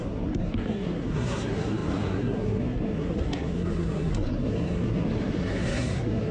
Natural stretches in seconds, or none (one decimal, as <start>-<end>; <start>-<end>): none